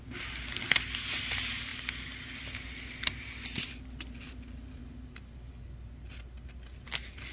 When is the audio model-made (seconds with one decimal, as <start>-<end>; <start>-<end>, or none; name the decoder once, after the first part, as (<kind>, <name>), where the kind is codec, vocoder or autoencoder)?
none